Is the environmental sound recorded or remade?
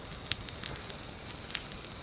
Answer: recorded